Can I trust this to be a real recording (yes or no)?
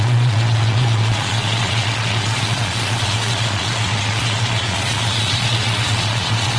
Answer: no